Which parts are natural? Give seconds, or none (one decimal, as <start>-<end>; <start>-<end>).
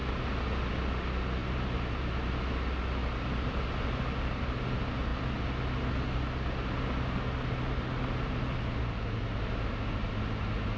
0.0-1.4; 2.3-3.0; 3.7-10.8